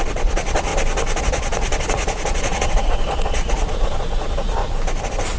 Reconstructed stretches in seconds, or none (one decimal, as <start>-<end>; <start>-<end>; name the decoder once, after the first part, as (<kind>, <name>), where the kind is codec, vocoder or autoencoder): 0.0-0.7 (vocoder, Vocos); 1.2-4.6